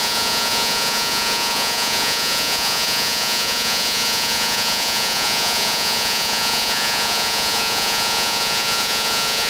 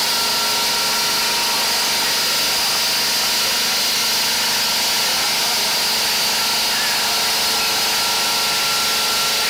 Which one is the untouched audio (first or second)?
second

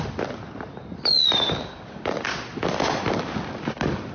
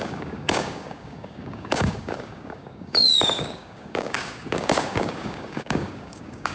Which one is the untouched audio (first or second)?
first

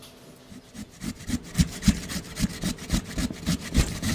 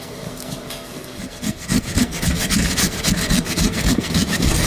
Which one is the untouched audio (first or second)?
first